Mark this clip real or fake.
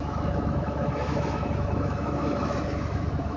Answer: fake